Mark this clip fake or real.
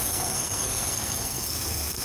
fake